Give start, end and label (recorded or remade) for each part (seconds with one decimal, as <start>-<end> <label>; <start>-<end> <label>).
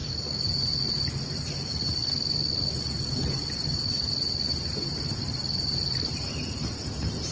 0.0-2.0 remade; 2.0-2.8 recorded; 2.8-7.3 remade